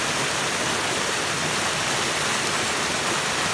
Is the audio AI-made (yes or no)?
no